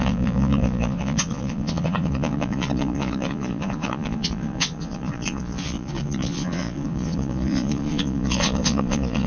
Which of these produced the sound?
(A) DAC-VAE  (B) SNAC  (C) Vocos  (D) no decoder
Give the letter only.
C